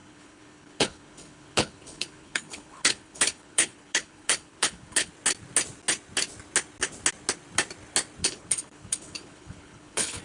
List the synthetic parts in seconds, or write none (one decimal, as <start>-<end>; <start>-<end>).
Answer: 0.0-5.1; 8.2-10.2